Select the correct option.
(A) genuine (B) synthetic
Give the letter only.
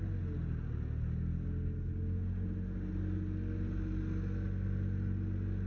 A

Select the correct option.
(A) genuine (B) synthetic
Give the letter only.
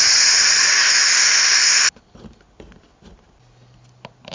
A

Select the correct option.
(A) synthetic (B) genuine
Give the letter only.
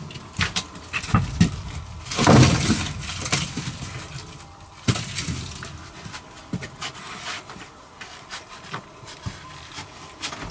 B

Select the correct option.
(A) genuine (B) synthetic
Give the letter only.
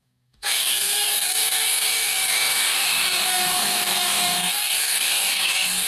B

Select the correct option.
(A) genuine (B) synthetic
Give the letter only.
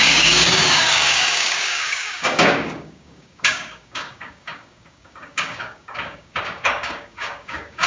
B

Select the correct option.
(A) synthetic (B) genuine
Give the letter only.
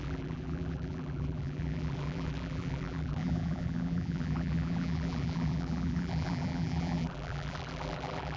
A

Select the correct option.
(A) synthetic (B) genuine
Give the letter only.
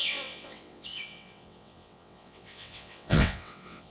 A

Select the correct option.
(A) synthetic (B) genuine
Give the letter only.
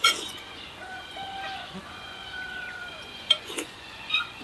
A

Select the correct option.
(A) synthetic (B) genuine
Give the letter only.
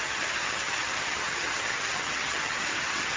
A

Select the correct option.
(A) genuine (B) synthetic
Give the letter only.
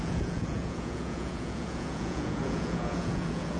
B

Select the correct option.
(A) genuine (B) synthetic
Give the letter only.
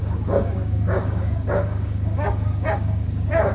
B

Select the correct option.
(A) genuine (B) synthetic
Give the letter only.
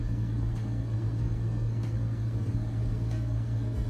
B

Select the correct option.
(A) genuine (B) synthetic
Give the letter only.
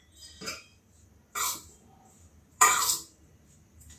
B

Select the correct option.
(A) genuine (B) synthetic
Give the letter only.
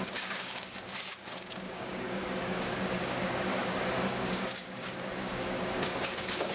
B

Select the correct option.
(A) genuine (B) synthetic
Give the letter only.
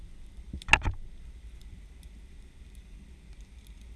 A